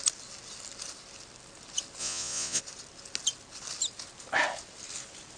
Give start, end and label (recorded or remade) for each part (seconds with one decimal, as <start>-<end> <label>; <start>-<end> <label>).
0.0-2.0 recorded; 2.0-2.6 remade; 2.6-5.4 recorded